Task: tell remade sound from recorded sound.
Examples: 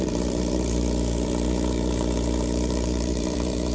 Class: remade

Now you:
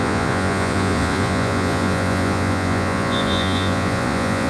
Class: remade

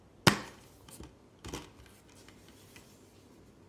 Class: recorded